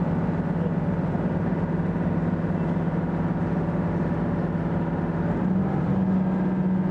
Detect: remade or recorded recorded